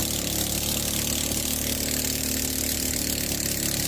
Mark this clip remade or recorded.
recorded